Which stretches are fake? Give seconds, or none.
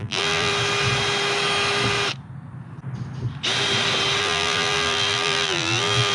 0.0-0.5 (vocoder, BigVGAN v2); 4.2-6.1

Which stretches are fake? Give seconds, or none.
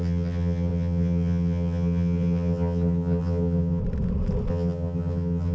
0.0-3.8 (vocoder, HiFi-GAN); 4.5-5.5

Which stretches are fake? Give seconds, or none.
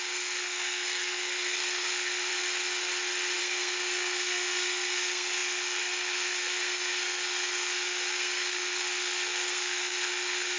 0.0-2.3 (codec, SNAC); 3.4-10.6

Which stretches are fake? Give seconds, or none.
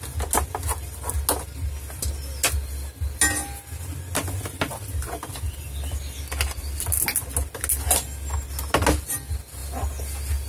none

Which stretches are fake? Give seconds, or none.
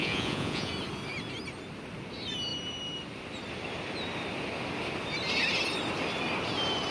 0.0-0.7 (vocoder, Vocos)